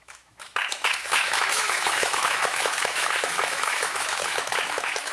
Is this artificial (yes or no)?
yes